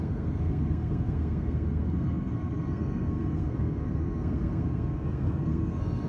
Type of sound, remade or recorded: remade